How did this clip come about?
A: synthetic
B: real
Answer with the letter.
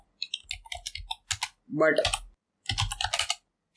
B